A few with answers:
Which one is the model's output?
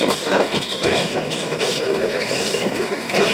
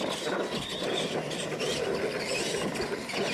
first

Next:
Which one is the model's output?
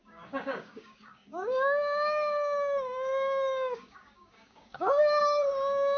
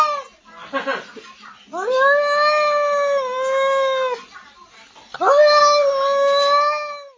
first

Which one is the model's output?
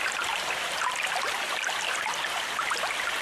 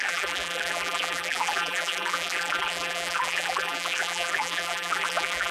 second